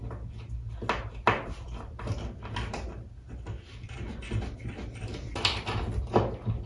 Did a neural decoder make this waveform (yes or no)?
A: no